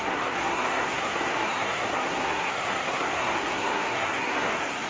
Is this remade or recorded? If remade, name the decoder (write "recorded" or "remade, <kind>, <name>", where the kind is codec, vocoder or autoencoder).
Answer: remade, codec, SNAC